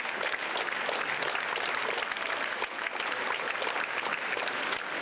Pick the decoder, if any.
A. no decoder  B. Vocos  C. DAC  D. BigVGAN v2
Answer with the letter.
A